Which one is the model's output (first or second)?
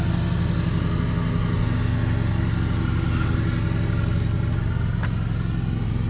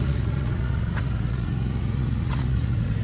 second